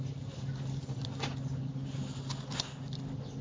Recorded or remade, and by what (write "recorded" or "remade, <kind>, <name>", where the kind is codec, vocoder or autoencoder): recorded